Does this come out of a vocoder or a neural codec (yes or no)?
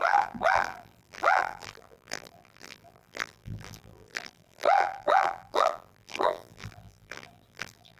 yes